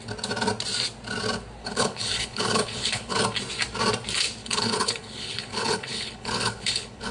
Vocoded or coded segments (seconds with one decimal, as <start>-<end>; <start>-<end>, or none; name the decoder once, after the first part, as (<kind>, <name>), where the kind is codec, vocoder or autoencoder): 1.6-3.2 (codec, HILCodec); 4.4-7.1